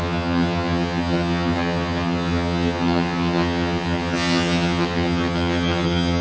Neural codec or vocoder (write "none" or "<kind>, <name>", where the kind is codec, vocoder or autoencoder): vocoder, HiFi-GAN